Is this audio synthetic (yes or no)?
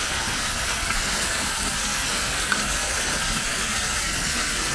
yes